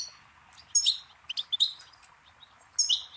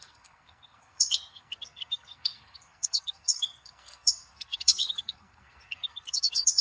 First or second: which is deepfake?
second